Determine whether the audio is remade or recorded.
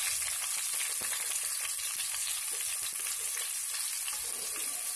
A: recorded